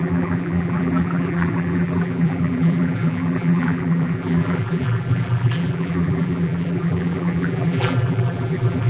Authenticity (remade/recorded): remade